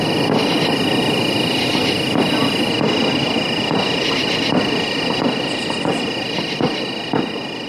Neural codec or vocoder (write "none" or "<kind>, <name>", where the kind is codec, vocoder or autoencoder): none